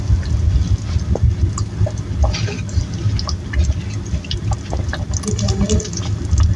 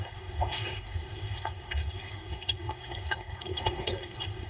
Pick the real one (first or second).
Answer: first